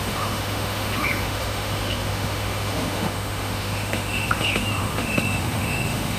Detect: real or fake fake